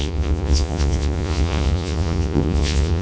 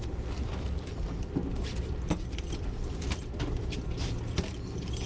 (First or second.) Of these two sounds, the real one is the second